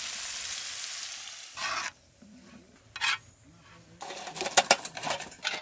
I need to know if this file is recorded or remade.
recorded